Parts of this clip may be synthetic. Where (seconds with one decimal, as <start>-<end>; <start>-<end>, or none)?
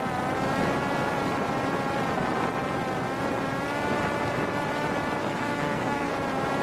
5.2-6.1